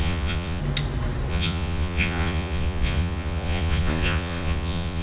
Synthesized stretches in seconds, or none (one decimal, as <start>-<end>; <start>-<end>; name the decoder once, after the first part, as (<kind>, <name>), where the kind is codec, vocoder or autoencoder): 0.0-0.6 (vocoder, Vocos); 1.3-5.0